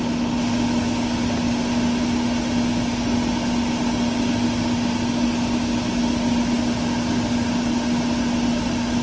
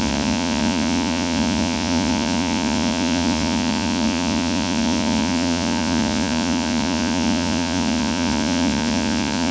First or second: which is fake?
second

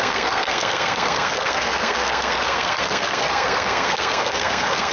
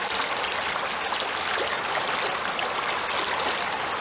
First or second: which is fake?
first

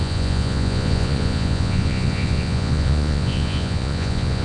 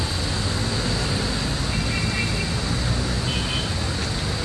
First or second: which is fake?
first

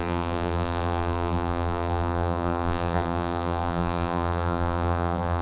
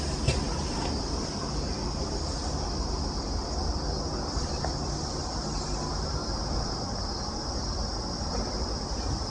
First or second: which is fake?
first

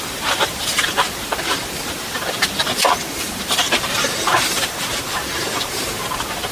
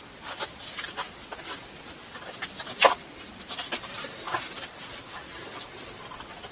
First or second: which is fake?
first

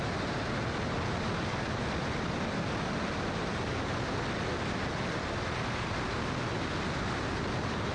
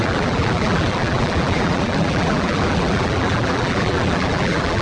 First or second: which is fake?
second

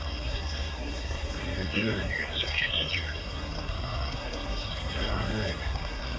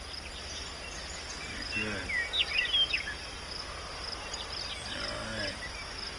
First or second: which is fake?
first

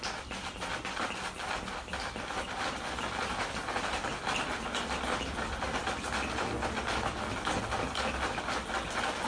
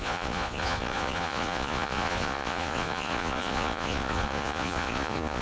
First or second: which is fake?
second